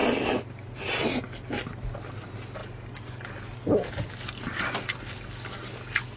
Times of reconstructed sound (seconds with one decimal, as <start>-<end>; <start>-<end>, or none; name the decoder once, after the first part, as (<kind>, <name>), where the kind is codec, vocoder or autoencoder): none